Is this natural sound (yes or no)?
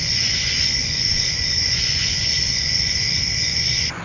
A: no